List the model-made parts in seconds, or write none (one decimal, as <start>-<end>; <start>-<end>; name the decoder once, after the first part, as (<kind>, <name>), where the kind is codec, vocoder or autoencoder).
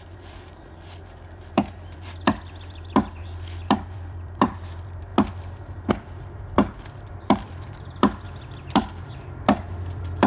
0.0-5.1 (vocoder, BigVGAN v2); 5.9-10.3